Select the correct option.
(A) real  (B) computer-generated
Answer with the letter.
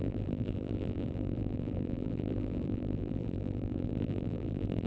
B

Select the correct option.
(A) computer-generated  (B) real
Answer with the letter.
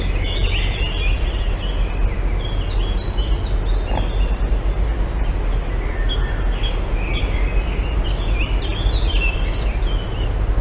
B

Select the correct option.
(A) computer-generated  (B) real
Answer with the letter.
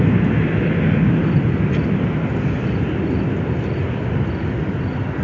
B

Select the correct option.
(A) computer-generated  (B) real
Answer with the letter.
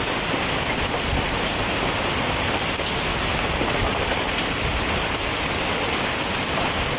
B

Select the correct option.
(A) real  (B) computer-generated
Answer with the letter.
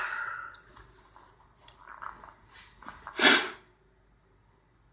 A